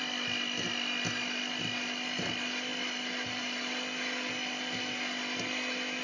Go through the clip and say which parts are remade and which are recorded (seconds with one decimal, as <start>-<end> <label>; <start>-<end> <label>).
0.0-6.0 recorded